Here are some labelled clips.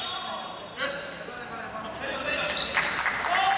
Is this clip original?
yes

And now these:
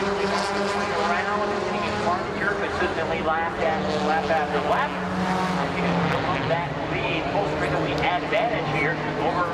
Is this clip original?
yes